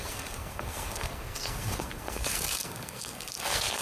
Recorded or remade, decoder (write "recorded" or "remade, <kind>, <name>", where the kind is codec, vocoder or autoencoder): remade, codec, SNAC